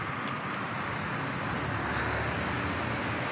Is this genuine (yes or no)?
yes